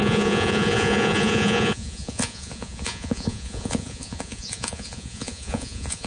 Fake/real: fake